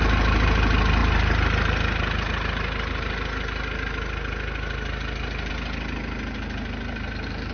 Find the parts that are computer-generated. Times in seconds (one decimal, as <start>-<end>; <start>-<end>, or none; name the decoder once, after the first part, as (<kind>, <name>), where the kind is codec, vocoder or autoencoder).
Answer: none